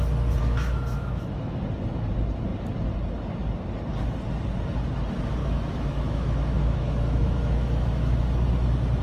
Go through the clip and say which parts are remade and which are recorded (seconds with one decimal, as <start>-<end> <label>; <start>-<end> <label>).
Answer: 0.0-0.4 recorded; 0.4-1.6 remade; 1.6-5.4 recorded; 5.4-8.2 remade; 8.2-9.0 recorded